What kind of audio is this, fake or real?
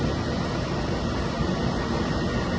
real